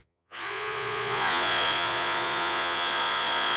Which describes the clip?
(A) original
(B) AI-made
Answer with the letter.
B